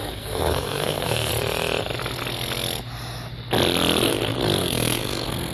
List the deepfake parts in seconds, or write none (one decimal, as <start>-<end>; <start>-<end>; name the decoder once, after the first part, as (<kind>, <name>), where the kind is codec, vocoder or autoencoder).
0.0-1.3 (codec, SNAC); 4.6-5.5